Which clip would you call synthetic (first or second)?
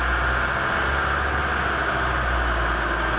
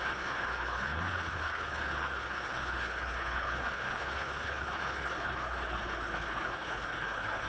second